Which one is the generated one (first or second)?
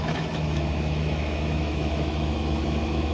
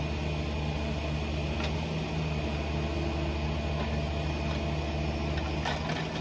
first